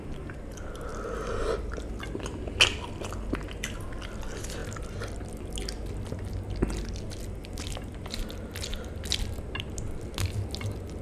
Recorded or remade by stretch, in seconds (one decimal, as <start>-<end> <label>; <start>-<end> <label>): 0.0-11.0 recorded